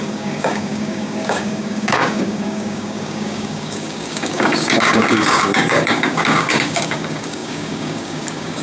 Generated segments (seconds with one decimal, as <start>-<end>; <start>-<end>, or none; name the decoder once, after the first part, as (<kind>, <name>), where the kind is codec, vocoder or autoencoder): 0.0-8.6 (codec, DAC)

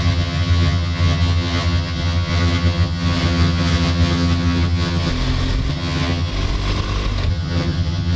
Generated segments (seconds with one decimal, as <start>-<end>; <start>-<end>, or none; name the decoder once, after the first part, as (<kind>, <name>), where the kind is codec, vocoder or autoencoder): 0.0-5.1 (vocoder, HiFi-GAN); 5.7-6.3; 7.3-8.2

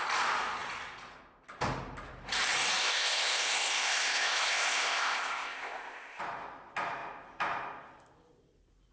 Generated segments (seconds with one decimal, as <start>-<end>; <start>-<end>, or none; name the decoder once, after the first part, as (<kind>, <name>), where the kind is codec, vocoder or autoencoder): 2.8-6.2 (codec, ZipCodec)

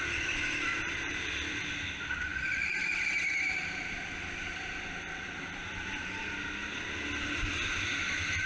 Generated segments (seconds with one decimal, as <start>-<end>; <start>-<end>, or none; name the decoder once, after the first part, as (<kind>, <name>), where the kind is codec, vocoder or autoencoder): 0.7-1.6 (vocoder, BigVGAN v2); 2.3-3.0; 5.6-6.2

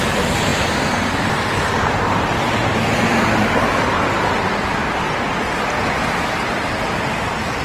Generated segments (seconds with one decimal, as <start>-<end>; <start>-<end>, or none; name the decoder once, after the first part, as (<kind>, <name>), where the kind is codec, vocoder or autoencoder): none

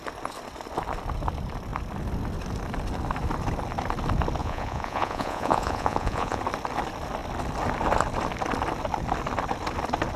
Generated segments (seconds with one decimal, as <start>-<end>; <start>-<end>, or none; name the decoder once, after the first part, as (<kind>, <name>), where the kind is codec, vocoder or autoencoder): 4.4-6.4 (vocoder, Vocos)

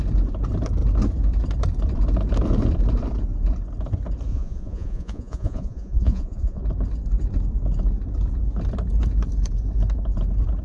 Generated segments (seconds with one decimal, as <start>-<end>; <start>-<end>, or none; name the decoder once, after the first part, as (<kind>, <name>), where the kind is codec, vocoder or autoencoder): 4.3-6.6 (vocoder, Vocos)